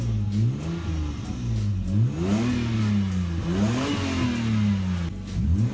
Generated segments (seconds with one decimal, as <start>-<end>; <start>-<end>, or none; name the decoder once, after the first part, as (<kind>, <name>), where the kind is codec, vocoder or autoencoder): none